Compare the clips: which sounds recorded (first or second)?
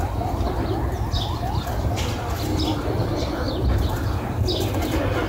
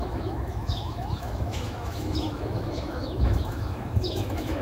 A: first